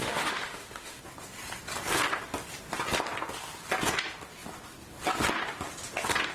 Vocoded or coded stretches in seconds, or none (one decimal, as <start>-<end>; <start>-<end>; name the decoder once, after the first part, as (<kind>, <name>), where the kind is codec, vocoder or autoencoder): 0.0-1.0 (autoencoder, DAC-VAE)